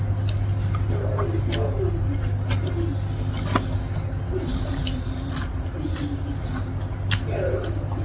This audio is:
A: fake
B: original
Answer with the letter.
B